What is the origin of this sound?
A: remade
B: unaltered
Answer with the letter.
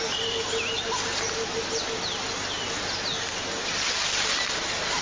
B